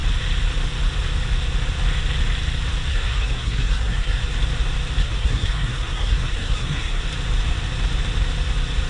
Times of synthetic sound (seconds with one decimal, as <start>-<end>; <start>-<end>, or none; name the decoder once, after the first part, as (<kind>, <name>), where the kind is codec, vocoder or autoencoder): 2.9-4.2 (codec, SNAC); 5.0-7.0